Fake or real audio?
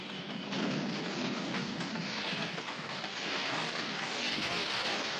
fake